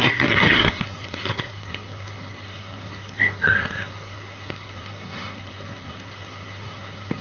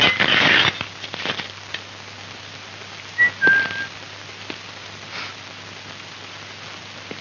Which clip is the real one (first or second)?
second